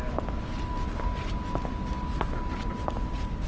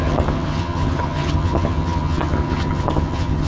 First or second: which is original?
first